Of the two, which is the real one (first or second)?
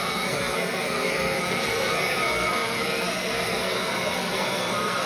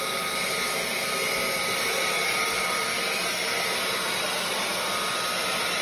second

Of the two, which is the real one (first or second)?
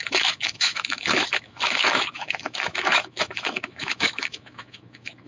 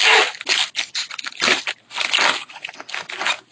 second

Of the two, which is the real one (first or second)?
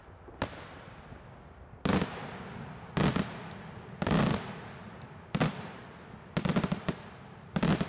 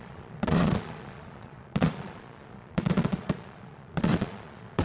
first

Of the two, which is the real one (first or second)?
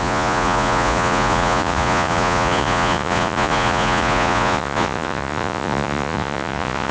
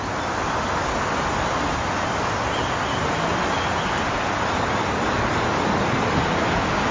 second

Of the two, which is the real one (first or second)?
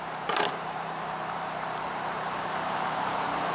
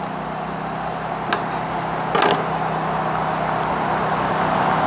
second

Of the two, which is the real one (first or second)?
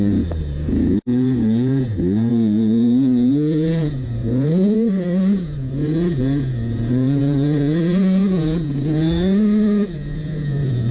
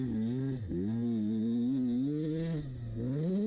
second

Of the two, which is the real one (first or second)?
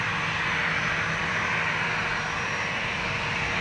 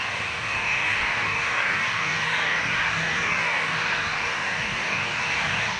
first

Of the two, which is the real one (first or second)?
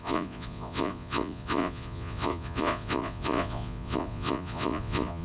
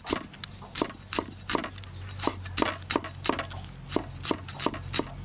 second